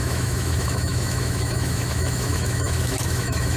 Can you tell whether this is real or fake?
fake